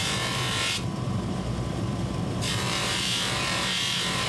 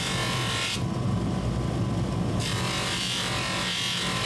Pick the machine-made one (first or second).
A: first